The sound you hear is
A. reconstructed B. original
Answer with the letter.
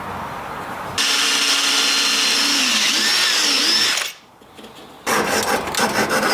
B